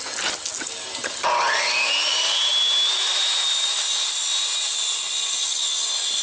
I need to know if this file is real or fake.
real